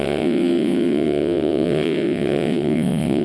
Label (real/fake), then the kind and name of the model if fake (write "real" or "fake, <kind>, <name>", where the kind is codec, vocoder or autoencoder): fake, vocoder, WaveNeXt